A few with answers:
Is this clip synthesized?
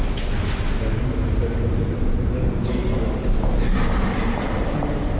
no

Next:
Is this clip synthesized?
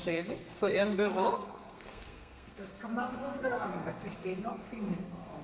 yes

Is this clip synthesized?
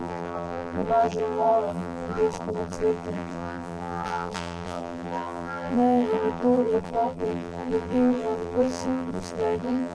yes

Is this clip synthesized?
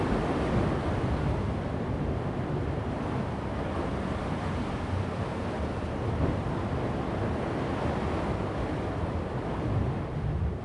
no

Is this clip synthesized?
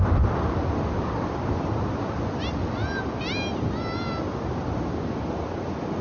no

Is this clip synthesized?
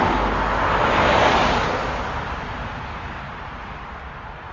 no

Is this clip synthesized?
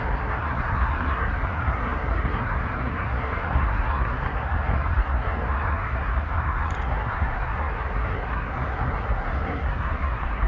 yes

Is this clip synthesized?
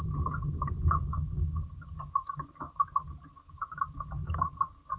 no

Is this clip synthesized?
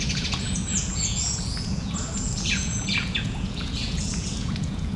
yes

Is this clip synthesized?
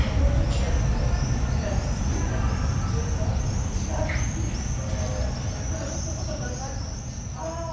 no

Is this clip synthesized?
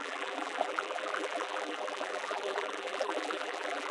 yes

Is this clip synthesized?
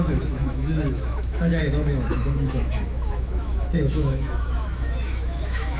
yes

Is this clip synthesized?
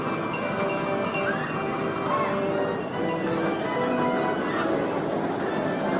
no